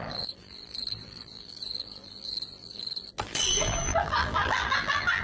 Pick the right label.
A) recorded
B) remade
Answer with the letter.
B